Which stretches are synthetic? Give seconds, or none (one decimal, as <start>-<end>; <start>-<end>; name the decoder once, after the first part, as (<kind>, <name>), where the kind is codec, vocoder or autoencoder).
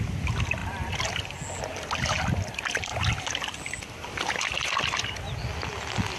none